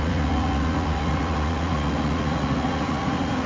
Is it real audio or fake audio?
fake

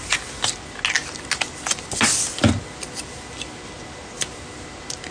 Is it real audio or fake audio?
real